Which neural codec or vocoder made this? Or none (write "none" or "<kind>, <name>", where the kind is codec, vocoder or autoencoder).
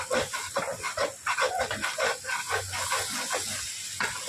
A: none